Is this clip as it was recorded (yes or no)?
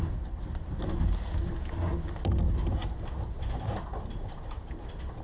yes